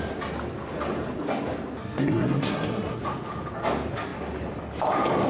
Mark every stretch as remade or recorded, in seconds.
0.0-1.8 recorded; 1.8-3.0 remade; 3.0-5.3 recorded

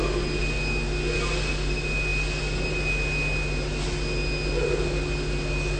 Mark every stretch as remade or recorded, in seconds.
0.0-5.8 recorded

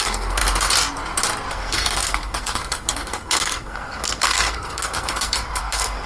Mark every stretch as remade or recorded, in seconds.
0.0-0.4 remade; 0.4-1.5 recorded; 1.5-6.1 remade